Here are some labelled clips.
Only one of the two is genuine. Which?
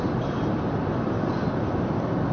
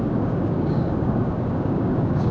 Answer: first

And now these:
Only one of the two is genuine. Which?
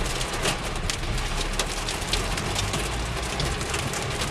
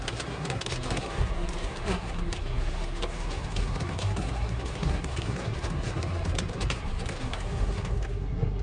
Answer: first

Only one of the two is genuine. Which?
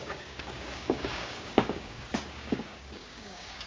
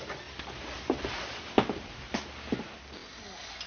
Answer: second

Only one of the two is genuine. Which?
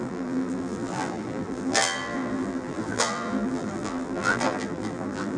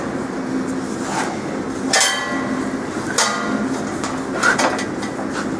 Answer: second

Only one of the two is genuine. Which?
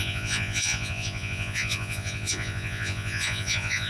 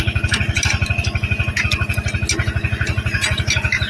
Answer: second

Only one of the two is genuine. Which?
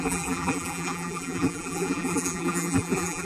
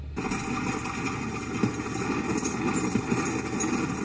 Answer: second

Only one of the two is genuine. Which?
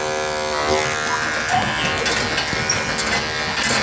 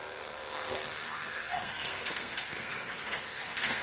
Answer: first